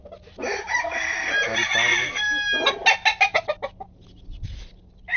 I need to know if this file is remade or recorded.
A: recorded